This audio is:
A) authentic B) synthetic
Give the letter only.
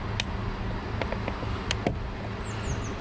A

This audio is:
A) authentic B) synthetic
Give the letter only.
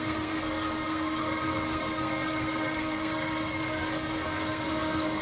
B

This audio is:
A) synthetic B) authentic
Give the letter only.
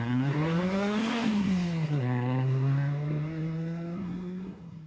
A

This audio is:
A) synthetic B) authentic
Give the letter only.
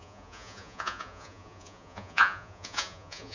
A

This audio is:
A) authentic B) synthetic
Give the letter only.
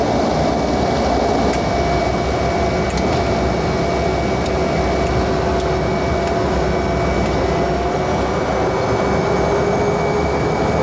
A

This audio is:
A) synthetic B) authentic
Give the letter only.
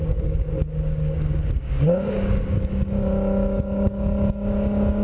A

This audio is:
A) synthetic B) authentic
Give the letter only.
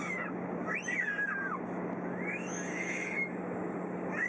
B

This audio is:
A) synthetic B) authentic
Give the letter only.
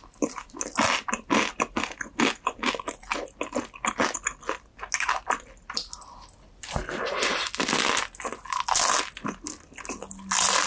B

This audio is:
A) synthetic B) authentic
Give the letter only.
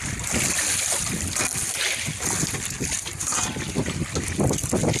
B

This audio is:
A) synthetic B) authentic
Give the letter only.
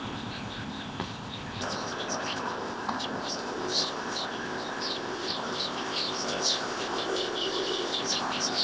A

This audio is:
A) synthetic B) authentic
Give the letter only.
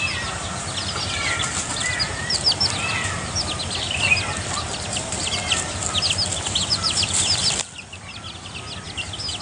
B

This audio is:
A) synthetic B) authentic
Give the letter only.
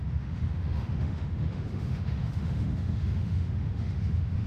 A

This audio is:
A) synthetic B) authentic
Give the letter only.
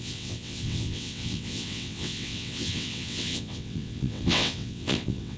A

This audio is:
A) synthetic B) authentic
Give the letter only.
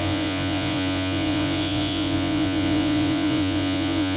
A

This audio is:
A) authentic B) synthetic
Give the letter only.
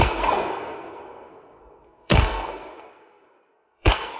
B